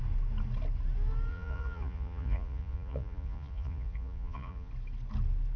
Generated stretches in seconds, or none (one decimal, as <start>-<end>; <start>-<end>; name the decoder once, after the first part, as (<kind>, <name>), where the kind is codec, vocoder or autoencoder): 1.3-4.7 (vocoder, Vocos)